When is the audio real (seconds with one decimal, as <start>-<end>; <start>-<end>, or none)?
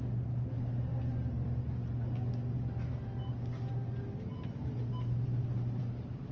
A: 0.0-6.3